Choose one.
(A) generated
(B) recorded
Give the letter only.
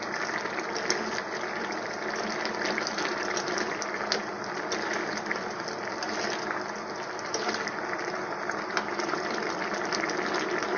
B